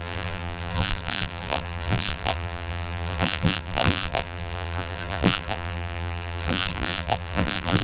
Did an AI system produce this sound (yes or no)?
yes